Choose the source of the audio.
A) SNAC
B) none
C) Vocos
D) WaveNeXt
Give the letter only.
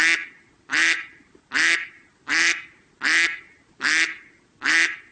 B